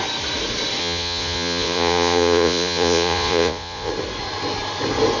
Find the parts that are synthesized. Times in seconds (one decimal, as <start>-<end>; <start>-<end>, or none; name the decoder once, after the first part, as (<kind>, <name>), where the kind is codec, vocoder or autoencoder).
0.8-3.9 (vocoder, Vocos)